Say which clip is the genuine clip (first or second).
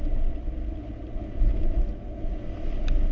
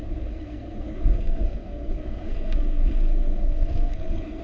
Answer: first